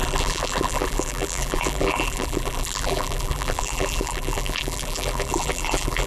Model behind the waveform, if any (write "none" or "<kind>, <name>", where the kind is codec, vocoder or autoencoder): vocoder, BigVGAN v2